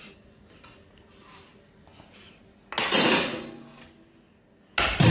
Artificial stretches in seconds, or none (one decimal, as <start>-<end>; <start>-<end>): none